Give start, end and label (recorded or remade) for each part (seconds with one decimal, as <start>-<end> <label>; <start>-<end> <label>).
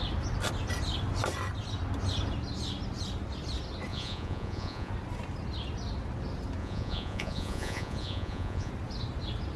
0.0-3.9 recorded; 3.9-4.9 remade; 4.9-6.6 recorded; 6.6-8.7 remade; 8.7-9.6 recorded